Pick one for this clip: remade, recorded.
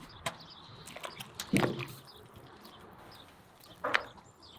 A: recorded